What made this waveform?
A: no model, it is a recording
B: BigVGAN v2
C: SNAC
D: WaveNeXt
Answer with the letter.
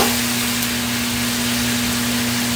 A